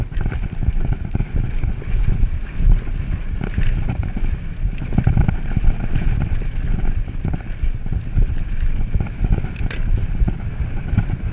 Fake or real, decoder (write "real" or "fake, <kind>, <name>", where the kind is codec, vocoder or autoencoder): real